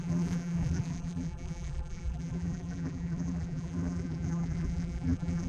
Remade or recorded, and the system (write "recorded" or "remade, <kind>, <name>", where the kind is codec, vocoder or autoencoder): remade, vocoder, BigVGAN v2